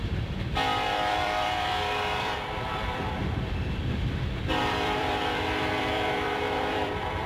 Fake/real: fake